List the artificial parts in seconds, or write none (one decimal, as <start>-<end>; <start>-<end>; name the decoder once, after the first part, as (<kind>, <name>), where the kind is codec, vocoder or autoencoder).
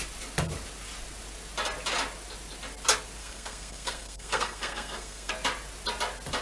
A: 3.2-5.3 (codec, SNAC)